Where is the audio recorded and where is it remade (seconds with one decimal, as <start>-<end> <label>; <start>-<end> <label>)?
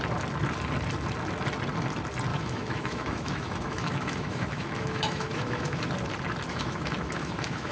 0.0-2.3 recorded; 2.3-5.8 remade; 5.8-6.5 recorded; 6.5-7.7 remade